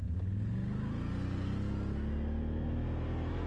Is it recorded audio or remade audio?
recorded